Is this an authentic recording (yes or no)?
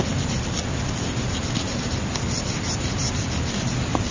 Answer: yes